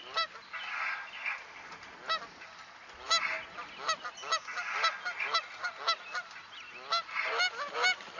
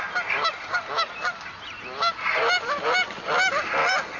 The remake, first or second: second